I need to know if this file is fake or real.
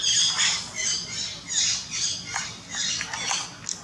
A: real